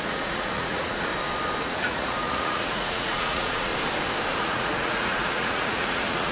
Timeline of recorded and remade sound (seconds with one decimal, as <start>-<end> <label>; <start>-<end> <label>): 0.0-1.1 remade; 1.1-1.6 recorded; 1.6-3.7 remade; 3.7-4.4 recorded; 4.4-6.3 remade